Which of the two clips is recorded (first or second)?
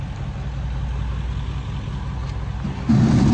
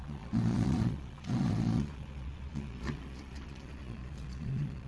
first